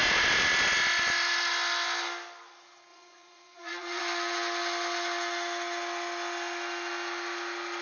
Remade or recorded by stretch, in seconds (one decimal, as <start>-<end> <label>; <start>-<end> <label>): 0.0-2.9 recorded; 2.9-4.0 remade; 4.0-7.8 recorded